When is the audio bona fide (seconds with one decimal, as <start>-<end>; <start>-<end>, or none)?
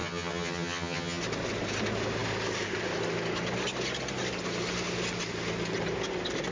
1.2-6.5